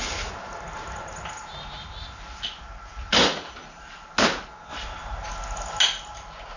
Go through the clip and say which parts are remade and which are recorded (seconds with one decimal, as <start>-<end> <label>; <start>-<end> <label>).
0.0-6.6 recorded

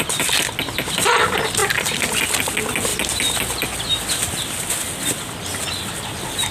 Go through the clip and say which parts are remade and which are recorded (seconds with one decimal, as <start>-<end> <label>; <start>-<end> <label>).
0.0-6.5 recorded